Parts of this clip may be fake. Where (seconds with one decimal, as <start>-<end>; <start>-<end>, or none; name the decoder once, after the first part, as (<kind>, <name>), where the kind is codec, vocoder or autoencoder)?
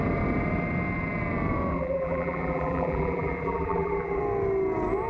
1.7-4.2 (vocoder, BigVGAN v2)